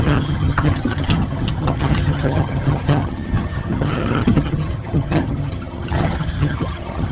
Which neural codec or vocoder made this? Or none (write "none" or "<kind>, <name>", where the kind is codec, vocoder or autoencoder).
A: vocoder, HiFi-GAN